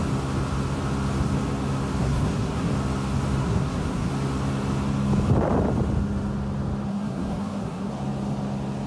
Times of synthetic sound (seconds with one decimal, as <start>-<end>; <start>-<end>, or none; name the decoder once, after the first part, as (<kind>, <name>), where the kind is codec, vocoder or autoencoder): 2.0-2.7 (codec, SNAC); 3.4-4.1; 6.9-7.9